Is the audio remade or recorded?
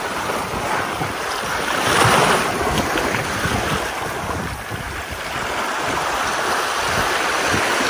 recorded